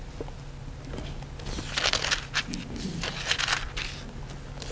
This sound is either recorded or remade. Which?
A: recorded